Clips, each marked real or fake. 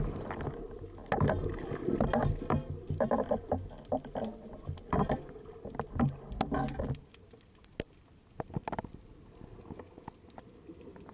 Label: real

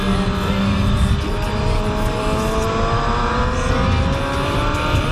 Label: real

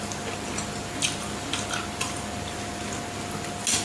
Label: real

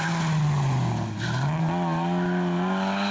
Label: real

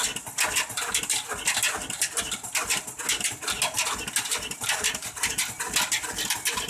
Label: real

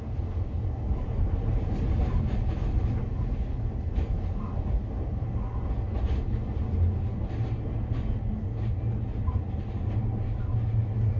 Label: real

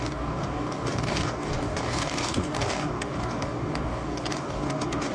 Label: fake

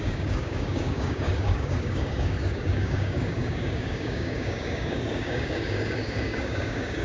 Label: fake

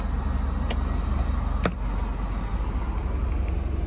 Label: real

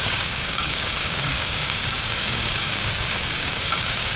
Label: fake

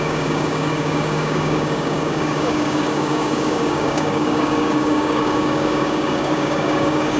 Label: fake